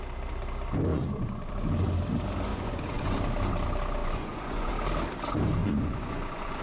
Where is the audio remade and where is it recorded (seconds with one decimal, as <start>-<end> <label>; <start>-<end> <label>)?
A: 0.0-0.9 recorded; 0.9-1.5 remade; 1.5-2.5 recorded; 2.5-3.2 remade; 3.2-4.0 recorded; 4.0-4.7 remade; 4.7-5.6 recorded; 5.6-6.6 remade